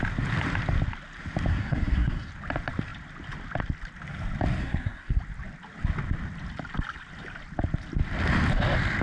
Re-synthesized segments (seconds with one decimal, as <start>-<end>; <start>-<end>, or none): 1.5-2.3; 4.6-5.2